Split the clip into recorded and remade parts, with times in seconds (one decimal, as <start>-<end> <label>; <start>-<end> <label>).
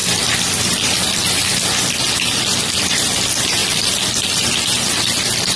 0.0-5.6 recorded